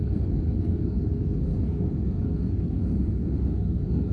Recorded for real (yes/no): no